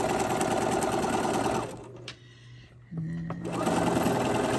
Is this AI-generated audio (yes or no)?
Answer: no